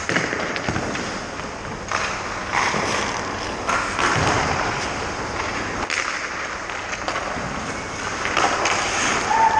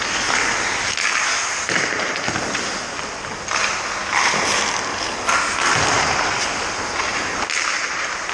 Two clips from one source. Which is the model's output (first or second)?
first